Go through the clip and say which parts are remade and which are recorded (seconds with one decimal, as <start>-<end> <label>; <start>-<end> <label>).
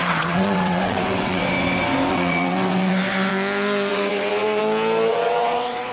0.0-1.4 remade; 1.4-2.1 recorded; 2.1-3.3 remade; 3.3-3.9 recorded; 3.9-4.6 remade; 4.6-5.1 recorded; 5.1-5.9 remade